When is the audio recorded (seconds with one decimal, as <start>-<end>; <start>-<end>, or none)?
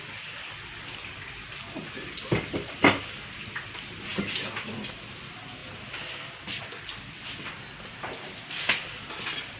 0.0-4.1; 5.1-9.6